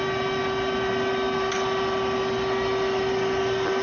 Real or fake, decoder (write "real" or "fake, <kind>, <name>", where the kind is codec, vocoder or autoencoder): real